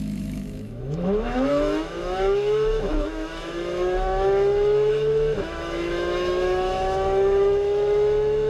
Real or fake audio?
fake